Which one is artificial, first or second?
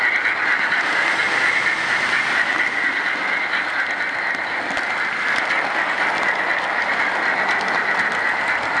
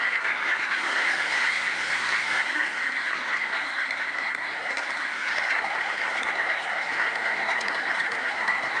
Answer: second